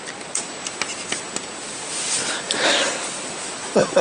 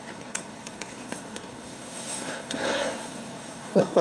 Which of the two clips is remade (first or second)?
second